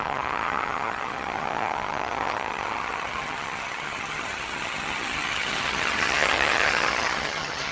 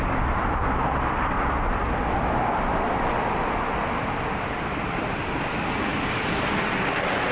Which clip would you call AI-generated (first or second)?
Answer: first